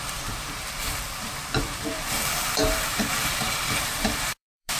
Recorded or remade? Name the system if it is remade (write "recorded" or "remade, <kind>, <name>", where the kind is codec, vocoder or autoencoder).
remade, vocoder, BigVGAN v2